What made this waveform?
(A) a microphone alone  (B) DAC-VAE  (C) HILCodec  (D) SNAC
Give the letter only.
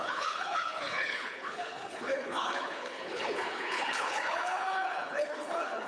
C